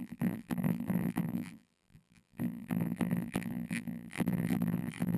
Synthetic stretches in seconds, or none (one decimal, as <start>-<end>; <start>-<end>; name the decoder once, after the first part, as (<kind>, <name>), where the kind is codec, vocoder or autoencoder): 0.0-5.2 (vocoder, BigVGAN v2)